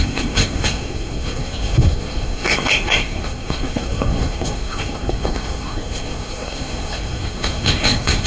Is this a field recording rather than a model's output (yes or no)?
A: no